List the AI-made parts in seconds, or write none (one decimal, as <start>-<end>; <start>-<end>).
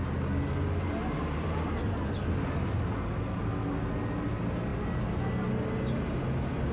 none